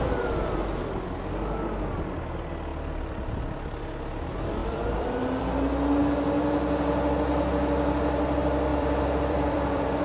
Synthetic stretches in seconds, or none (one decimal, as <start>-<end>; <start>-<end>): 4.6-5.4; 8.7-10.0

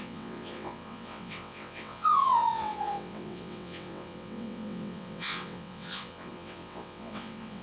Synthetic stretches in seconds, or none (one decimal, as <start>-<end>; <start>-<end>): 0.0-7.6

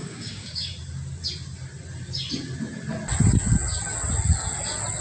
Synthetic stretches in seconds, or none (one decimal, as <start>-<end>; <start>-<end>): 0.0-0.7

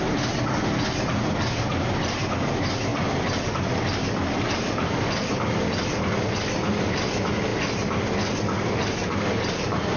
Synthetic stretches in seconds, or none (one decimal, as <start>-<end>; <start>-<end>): none

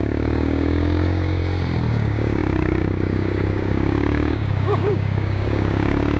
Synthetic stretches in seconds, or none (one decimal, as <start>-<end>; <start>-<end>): 0.0-1.4; 1.9-6.2

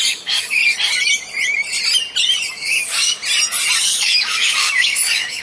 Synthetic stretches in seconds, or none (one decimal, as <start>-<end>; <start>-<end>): 0.0-0.6; 2.5-3.2; 3.8-5.4